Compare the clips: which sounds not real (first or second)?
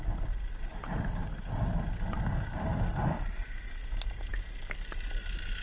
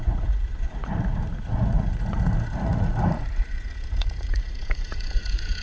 second